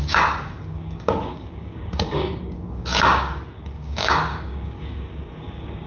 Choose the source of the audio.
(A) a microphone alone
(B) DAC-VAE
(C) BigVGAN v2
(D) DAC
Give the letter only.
D